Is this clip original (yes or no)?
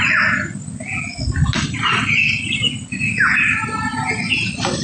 yes